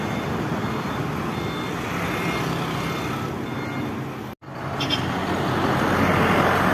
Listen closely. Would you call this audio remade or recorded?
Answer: recorded